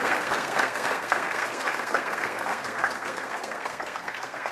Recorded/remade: remade